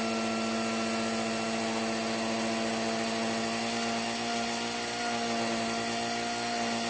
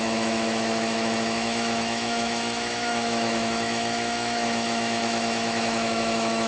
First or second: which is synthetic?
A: second